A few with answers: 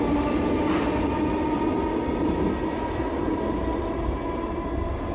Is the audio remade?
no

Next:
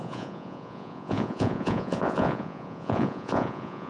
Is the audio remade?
yes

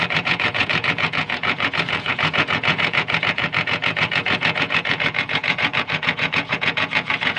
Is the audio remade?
yes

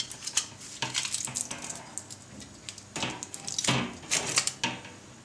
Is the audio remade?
no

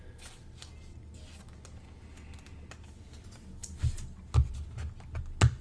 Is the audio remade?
no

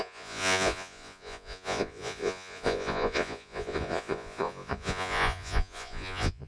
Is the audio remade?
yes